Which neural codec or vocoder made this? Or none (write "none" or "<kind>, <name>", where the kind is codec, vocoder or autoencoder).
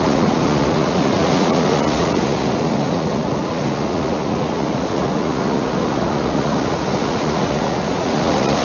vocoder, Vocos